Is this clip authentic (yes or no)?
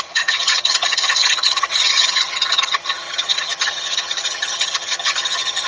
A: no